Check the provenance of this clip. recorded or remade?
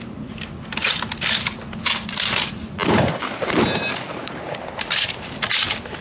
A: recorded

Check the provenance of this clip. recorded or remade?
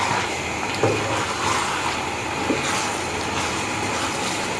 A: recorded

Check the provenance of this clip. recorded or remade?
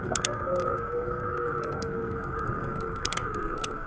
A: remade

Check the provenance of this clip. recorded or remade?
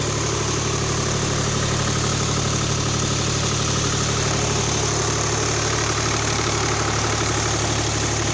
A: remade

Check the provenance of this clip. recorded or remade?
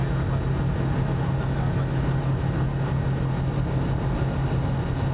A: recorded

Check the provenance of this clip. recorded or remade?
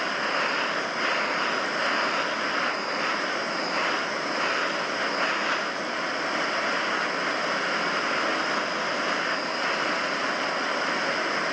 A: recorded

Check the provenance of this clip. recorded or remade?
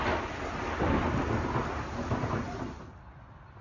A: recorded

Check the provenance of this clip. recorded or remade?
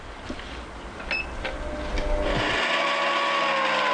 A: recorded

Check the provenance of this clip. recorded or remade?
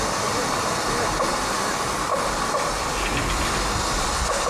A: recorded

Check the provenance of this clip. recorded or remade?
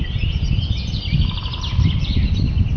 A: recorded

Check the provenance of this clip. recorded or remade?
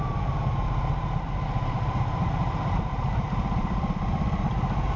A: recorded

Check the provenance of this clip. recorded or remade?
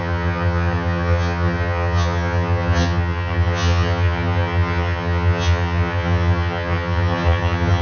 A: remade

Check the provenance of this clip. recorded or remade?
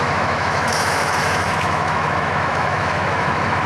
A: remade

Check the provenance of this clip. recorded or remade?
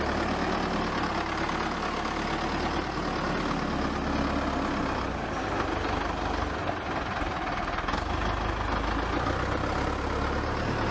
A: recorded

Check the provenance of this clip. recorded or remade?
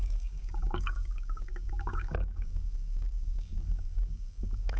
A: remade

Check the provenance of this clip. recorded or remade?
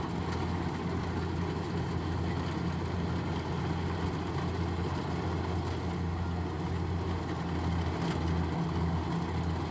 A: recorded